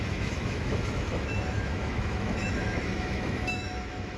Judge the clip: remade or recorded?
remade